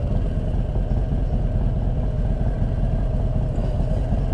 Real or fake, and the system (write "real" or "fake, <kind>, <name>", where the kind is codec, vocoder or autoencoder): real